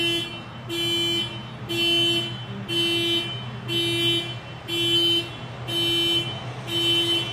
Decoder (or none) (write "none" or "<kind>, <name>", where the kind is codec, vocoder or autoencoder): none